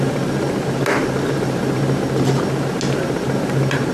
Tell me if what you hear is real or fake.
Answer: real